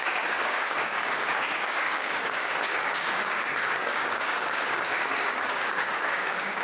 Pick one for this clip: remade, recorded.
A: remade